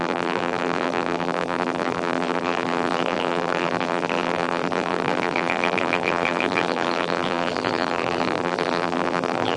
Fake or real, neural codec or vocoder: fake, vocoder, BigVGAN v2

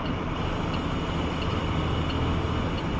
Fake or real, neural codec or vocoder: real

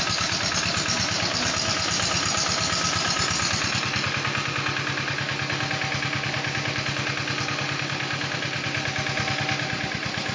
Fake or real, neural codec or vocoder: real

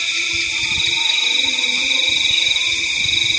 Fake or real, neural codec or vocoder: real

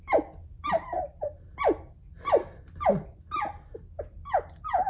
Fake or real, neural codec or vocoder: real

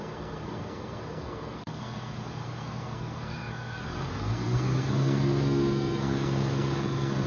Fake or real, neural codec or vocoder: fake, codec, SNAC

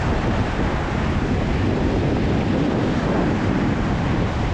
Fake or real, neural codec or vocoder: real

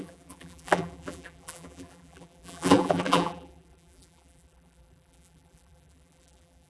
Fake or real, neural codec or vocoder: fake, vocoder, BigVGAN v2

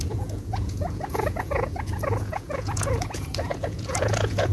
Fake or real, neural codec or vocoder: fake, vocoder, Vocos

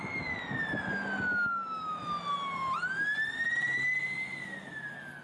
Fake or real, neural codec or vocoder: real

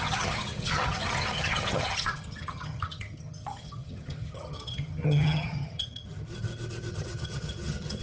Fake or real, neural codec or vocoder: fake, vocoder, HiFi-GAN